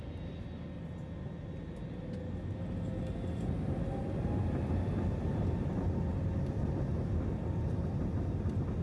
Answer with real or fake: real